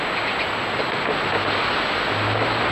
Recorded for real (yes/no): yes